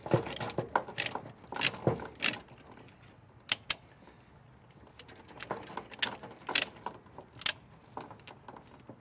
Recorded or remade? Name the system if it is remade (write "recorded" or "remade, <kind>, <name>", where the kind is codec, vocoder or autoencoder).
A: recorded